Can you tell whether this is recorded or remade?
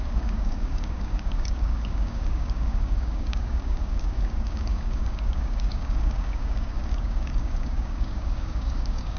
remade